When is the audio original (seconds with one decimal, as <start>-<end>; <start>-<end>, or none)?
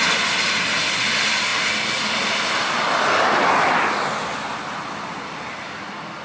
0.0-6.2